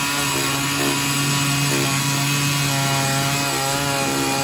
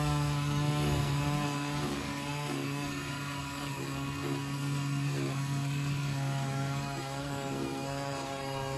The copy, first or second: second